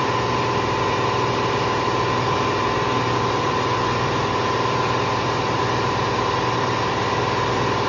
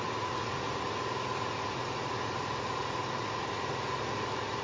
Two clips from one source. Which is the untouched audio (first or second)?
first